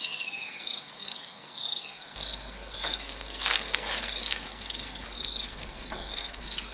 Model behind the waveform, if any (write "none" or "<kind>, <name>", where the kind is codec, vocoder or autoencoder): codec, SNAC